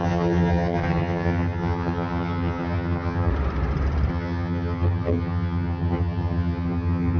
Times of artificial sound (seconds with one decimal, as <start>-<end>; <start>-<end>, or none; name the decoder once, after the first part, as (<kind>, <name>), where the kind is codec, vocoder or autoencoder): 0.0-3.3 (vocoder, HiFi-GAN); 4.1-7.2